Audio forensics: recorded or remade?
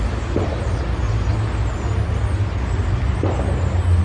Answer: recorded